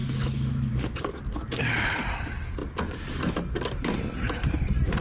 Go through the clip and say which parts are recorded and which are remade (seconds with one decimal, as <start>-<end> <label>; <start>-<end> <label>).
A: 0.0-0.7 remade; 0.7-5.0 recorded